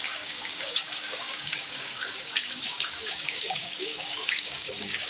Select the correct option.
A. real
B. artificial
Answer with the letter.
B